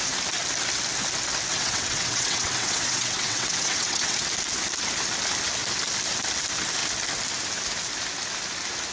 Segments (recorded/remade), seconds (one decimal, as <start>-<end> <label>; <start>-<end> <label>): 0.0-1.5 recorded; 1.5-4.2 remade; 4.2-8.9 recorded